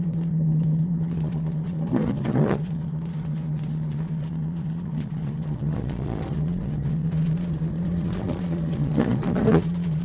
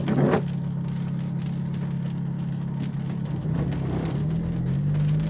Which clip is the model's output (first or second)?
first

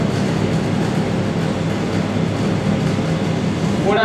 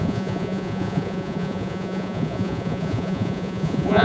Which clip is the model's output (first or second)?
second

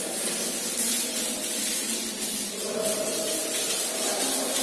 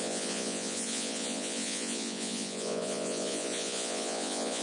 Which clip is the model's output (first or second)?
second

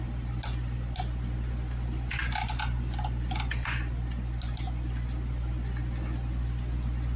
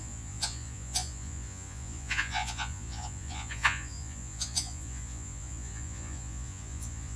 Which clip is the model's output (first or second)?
second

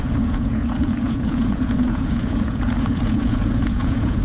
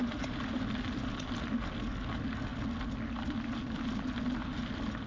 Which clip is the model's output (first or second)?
first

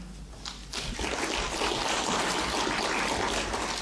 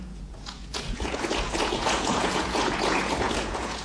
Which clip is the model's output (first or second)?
second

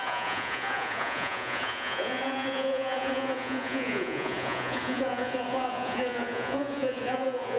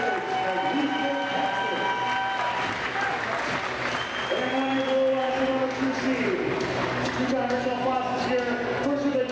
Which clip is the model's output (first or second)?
first